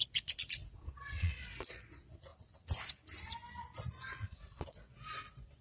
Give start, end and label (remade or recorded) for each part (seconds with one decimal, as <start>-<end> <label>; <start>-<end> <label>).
0.0-2.3 remade; 2.3-4.1 recorded; 4.1-5.6 remade